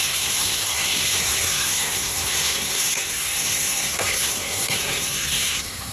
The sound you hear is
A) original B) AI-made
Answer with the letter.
B